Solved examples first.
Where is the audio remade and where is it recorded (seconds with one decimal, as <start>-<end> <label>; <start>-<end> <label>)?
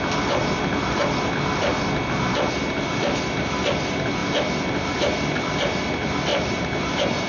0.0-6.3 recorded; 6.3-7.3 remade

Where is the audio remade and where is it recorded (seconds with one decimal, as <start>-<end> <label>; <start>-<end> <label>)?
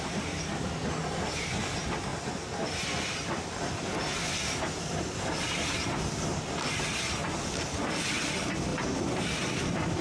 0.0-10.0 recorded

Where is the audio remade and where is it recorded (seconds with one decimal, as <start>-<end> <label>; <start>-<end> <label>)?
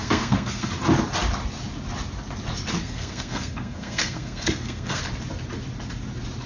0.0-0.7 remade; 0.7-2.8 recorded; 2.8-5.0 remade; 5.0-6.5 recorded